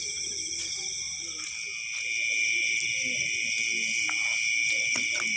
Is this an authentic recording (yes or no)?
yes